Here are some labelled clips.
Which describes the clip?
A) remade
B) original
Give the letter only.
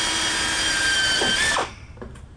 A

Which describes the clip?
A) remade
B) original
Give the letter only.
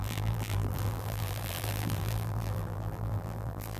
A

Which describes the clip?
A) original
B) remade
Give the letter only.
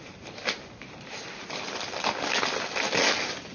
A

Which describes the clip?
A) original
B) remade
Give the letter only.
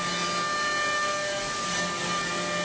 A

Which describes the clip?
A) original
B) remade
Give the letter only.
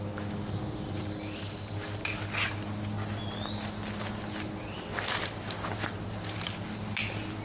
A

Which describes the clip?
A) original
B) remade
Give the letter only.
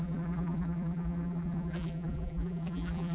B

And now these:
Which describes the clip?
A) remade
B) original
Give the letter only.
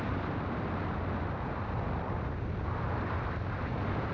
A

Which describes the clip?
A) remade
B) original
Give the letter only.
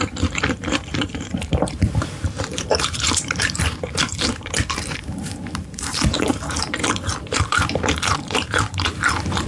A